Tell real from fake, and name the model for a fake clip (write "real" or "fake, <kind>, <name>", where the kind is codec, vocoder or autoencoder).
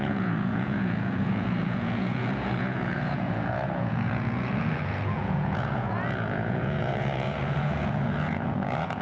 fake, vocoder, Vocos